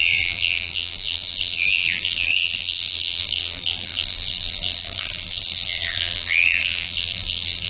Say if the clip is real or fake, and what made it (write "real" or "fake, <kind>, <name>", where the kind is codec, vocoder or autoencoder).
fake, vocoder, BigVGAN v2